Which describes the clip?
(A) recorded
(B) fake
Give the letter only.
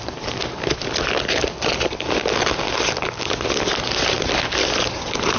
A